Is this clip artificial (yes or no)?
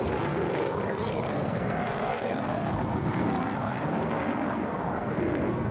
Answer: yes